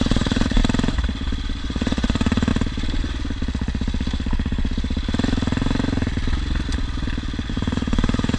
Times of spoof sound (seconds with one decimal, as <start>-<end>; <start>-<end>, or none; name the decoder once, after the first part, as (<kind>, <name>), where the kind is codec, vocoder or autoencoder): 0.0-0.6 (vocoder, Vocos); 1.6-2.5; 7.5-8.4